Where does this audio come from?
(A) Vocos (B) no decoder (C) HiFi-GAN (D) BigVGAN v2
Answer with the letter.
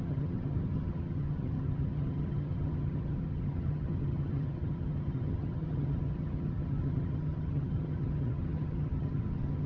C